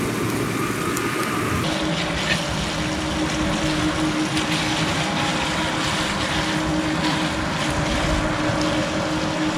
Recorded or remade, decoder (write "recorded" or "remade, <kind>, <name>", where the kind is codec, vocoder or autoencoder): recorded